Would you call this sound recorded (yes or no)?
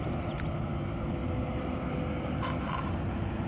yes